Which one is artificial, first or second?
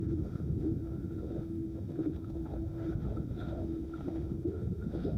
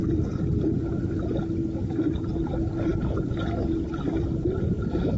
first